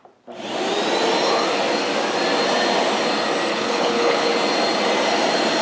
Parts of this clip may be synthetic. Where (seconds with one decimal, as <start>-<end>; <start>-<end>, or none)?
3.5-4.3